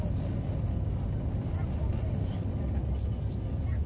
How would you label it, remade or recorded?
recorded